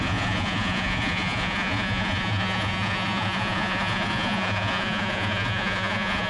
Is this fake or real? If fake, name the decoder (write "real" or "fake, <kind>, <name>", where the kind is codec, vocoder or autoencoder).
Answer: fake, vocoder, Vocos